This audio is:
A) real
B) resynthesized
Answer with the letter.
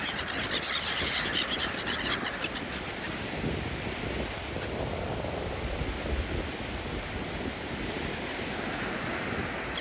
A